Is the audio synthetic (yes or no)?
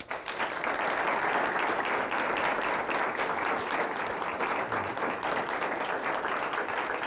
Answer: no